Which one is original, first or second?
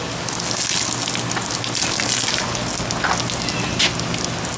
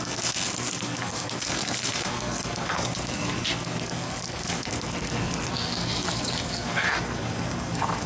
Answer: first